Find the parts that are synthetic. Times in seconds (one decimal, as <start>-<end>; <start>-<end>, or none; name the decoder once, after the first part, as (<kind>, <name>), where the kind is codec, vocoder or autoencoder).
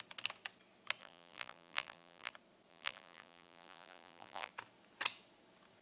1.0-2.3 (vocoder, BigVGAN v2); 2.7-4.5